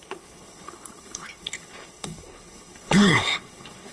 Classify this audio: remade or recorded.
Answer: remade